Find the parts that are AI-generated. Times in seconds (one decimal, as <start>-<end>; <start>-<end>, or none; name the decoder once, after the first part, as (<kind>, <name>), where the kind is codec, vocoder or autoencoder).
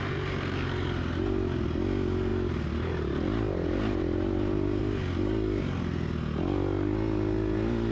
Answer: none